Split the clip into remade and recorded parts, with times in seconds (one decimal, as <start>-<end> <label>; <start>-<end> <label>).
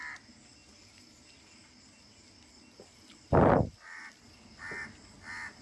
0.0-5.6 recorded